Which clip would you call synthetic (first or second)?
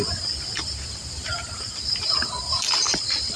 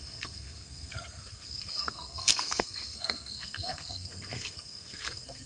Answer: second